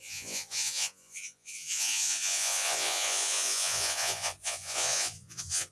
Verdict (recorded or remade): remade